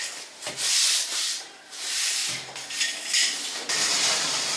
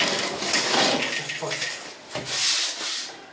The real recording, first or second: second